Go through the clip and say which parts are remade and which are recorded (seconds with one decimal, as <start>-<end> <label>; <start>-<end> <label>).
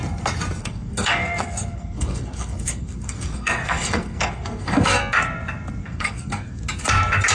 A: 0.0-0.6 recorded; 0.6-5.0 remade; 5.0-5.8 recorded; 5.8-6.6 remade; 6.6-7.3 recorded